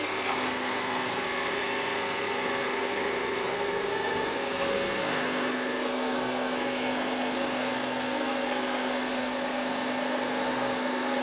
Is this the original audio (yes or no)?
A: no